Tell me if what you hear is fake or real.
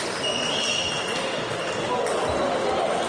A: real